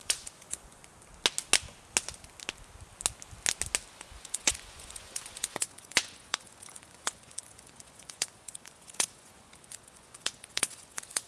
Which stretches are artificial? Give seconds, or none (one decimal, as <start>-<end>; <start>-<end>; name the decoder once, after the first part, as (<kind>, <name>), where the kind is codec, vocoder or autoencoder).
0.0-0.8 (vocoder, Vocos); 3.9-11.3